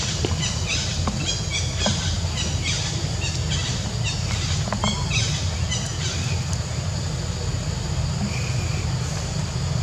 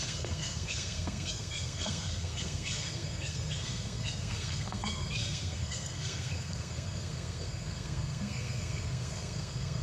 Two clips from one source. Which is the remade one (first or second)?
second